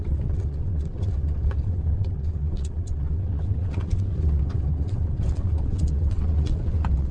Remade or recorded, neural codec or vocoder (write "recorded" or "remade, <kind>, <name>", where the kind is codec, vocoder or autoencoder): remade, vocoder, WaveNeXt